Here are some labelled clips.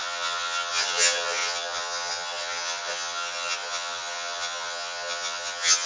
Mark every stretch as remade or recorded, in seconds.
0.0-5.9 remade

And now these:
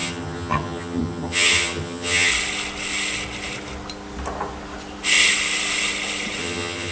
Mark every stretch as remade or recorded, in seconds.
0.0-2.3 remade; 2.3-6.4 recorded; 6.4-6.9 remade

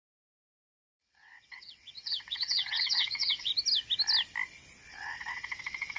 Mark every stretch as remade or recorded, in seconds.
0.0-3.5 remade; 3.5-4.9 recorded; 4.9-6.0 remade